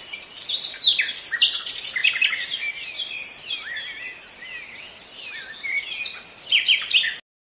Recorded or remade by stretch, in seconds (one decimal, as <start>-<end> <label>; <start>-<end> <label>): 0.0-7.4 recorded